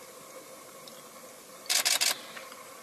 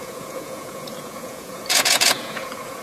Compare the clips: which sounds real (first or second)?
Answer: first